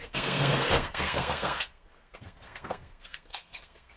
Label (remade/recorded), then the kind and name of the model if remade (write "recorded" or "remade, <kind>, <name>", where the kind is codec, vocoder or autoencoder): remade, codec, SNAC